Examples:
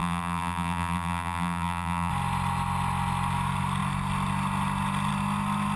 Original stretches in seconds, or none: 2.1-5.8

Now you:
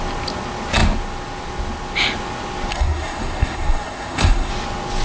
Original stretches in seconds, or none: 0.0-2.7; 4.5-5.0

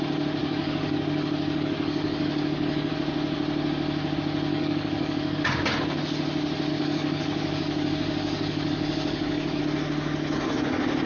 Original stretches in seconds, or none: 0.0-0.4; 2.9-4.5; 5.4-6.7; 9.6-11.1